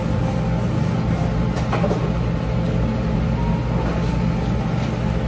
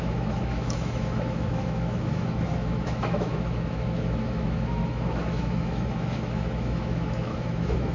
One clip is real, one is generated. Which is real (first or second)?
first